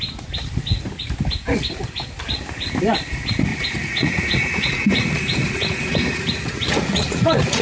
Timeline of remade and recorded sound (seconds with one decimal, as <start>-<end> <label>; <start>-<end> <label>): 0.0-3.5 recorded; 3.5-7.6 remade